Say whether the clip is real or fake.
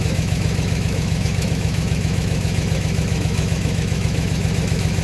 fake